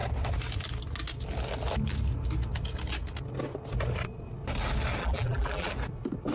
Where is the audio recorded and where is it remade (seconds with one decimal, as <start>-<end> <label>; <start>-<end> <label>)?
0.0-5.0 recorded; 5.0-5.7 remade; 5.7-6.3 recorded